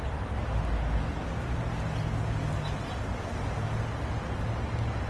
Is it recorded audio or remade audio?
recorded